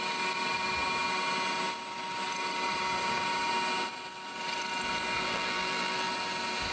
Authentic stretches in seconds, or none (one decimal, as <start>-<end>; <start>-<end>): 0.0-5.2; 6.1-6.7